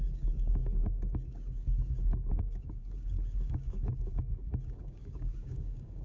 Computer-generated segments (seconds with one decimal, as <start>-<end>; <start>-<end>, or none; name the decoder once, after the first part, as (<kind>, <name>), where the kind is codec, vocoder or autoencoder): 0.0-6.0 (codec, DAC)